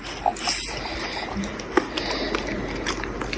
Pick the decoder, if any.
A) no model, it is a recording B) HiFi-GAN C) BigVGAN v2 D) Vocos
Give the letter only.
A